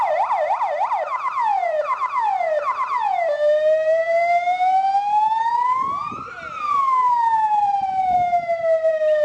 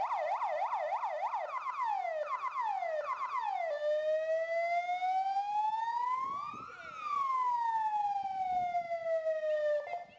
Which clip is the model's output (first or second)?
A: first